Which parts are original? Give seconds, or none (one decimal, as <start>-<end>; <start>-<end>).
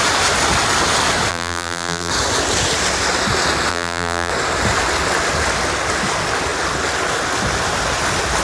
0.0-1.3; 2.1-3.7; 4.3-8.4